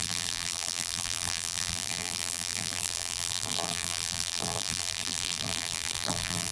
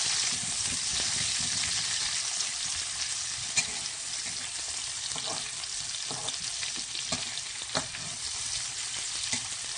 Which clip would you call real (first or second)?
second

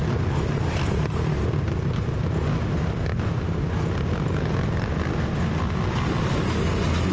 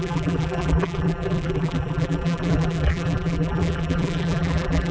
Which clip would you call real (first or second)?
first